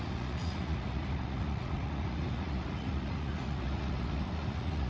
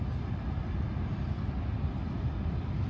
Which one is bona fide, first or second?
second